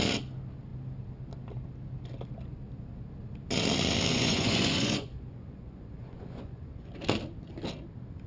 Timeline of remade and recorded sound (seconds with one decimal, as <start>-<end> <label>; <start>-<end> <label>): 0.0-4.1 recorded; 4.1-7.0 remade; 7.0-8.3 recorded

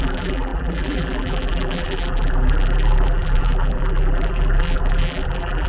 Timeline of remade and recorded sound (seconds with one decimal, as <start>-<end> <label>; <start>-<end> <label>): 0.0-5.7 remade